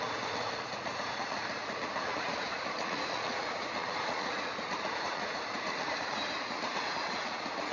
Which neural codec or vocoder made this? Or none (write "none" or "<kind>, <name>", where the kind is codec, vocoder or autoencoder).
vocoder, Vocos